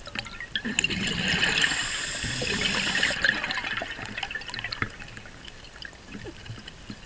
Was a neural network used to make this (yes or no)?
no